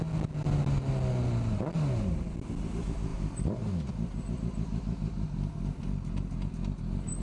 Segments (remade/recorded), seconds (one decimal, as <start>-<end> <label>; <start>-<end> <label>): 0.0-7.2 recorded